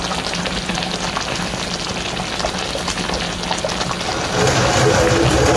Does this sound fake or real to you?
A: real